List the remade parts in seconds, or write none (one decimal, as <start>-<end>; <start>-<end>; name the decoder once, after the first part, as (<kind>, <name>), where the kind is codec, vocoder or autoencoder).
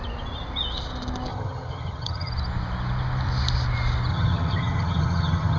1.3-2.3 (vocoder, HiFi-GAN); 4.1-5.6